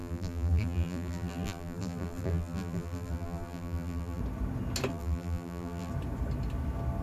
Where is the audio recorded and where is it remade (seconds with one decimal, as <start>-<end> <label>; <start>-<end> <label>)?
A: 0.0-4.2 remade; 4.2-4.9 recorded; 4.9-5.9 remade; 5.9-7.0 recorded